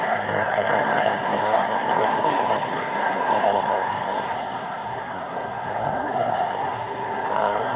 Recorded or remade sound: remade